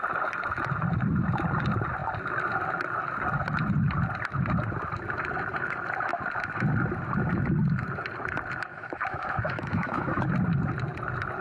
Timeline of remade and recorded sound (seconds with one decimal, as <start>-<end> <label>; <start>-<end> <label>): 0.0-8.7 recorded; 8.7-10.2 remade; 10.2-11.4 recorded